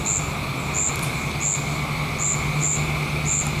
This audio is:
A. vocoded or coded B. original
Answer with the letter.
B